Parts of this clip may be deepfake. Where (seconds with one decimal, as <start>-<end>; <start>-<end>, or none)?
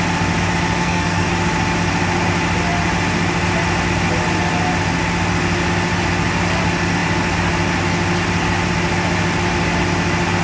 0.8-1.3